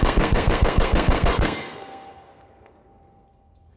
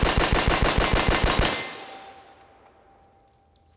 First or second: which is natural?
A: second